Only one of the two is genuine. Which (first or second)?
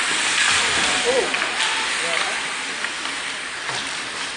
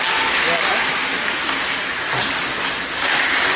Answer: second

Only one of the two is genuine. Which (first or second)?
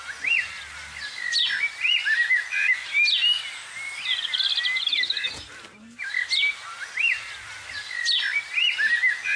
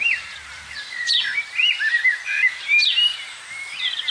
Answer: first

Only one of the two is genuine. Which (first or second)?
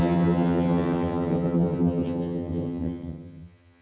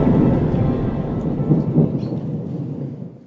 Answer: second